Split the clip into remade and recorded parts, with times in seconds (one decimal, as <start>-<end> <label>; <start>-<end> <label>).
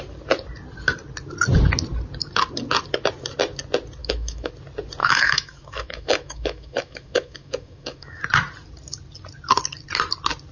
0.0-4.0 recorded; 4.0-4.5 remade; 4.5-5.0 recorded; 5.0-8.2 remade; 8.2-10.5 recorded